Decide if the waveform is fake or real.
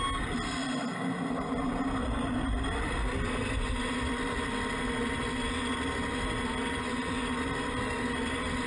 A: real